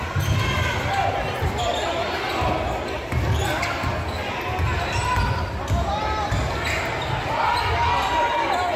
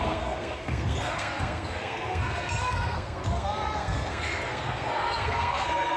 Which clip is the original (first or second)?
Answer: first